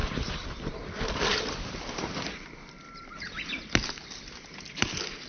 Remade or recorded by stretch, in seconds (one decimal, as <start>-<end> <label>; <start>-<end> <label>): 0.0-5.3 recorded